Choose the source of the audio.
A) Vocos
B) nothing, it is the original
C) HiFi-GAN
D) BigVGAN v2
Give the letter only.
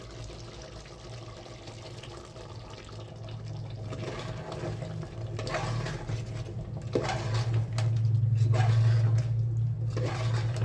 B